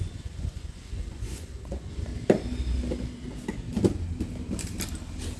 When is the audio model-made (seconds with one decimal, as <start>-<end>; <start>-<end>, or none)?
0.0-2.1